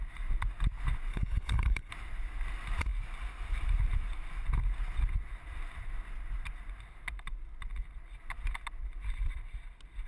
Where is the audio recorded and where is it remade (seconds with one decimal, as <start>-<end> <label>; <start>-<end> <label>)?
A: 0.0-1.1 recorded; 1.1-1.9 remade; 1.9-10.1 recorded